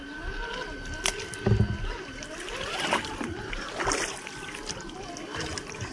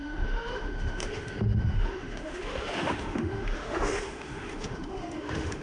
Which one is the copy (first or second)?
second